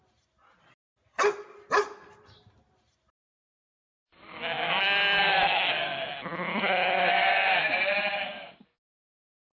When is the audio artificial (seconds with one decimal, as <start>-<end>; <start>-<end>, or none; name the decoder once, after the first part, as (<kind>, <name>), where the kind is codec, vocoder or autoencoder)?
none